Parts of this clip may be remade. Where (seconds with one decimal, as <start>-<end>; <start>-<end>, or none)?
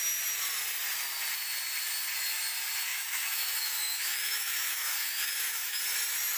2.9-5.8